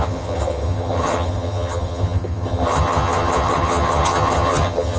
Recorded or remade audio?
remade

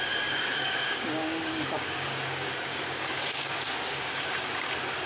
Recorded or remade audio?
remade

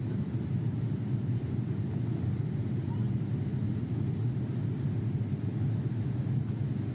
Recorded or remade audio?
recorded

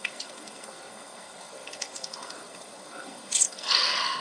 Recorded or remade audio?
remade